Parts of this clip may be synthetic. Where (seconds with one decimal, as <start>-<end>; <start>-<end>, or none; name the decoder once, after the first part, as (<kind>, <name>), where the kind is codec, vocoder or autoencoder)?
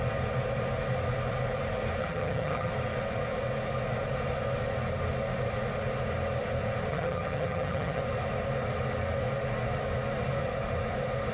2.0-2.7 (vocoder, HiFi-GAN); 6.9-8.0